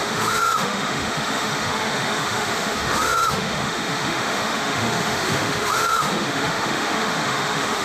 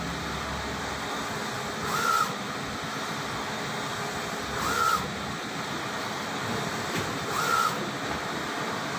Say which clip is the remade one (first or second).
first